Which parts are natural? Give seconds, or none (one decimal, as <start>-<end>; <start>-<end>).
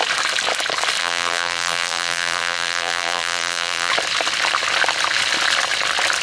0.0-1.0; 3.9-6.2